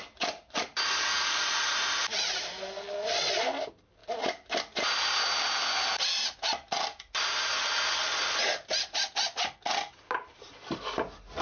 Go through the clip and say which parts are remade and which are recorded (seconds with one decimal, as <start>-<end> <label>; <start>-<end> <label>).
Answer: 0.0-11.4 recorded